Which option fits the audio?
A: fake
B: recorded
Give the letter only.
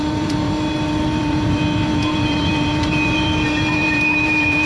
A